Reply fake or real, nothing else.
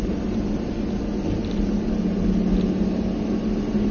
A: real